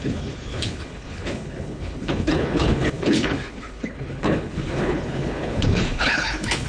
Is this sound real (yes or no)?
no